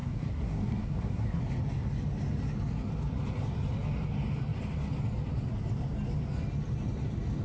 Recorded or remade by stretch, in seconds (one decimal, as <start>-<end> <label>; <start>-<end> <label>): 0.0-1.4 remade; 1.4-7.4 recorded